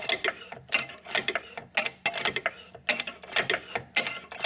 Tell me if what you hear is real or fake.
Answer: real